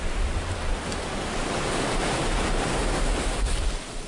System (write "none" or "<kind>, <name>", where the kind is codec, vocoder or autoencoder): none